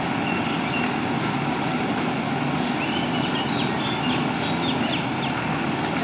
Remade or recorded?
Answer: recorded